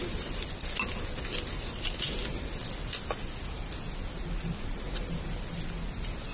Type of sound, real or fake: real